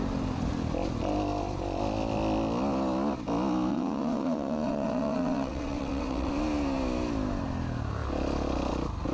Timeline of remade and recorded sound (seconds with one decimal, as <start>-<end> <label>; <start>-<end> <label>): 0.0-3.7 recorded; 3.7-6.3 remade; 6.3-9.1 recorded